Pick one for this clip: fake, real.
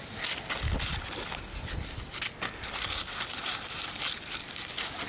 real